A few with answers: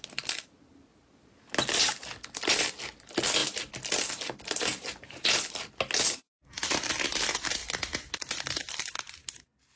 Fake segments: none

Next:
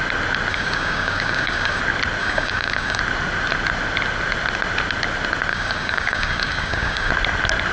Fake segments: 0.5-1.8 (codec, DAC); 2.2-3.0; 5.5-7.1

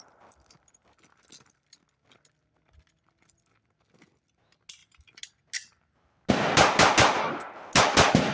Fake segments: none